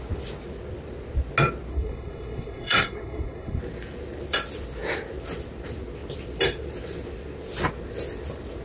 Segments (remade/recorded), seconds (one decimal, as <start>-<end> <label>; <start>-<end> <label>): 0.0-1.7 recorded; 1.7-3.6 remade; 3.6-8.6 recorded